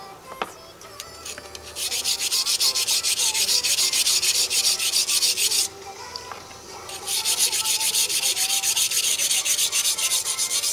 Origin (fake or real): real